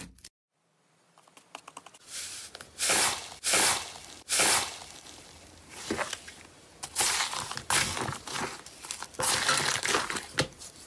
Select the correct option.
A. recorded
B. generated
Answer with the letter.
A